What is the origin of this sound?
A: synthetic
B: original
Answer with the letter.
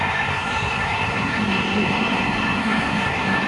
A